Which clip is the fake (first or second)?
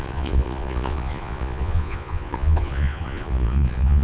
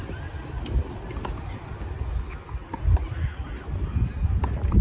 first